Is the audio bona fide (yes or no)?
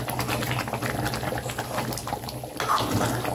yes